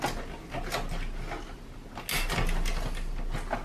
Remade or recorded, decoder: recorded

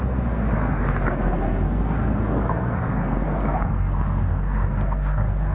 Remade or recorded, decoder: remade, codec, SNAC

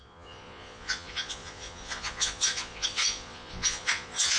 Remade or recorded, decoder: remade, vocoder, Vocos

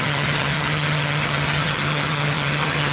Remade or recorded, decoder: remade, vocoder, HiFi-GAN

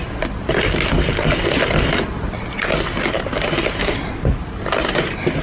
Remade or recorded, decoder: recorded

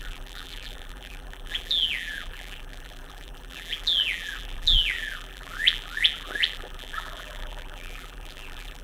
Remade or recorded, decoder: remade, vocoder, BigVGAN v2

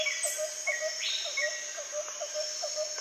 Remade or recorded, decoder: recorded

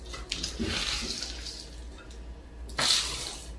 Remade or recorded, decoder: recorded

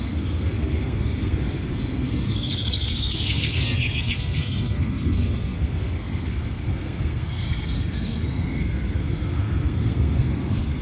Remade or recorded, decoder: remade, codec, SNAC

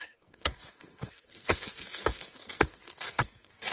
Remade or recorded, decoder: remade, codec, SNAC